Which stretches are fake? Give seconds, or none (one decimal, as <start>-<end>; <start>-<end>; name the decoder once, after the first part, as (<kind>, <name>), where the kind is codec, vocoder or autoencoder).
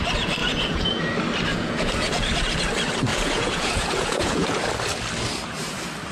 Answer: 0.4-1.0 (vocoder, Vocos); 1.5-2.3; 3.1-4.6